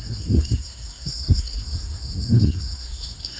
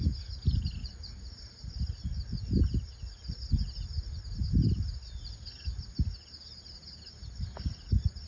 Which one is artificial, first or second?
first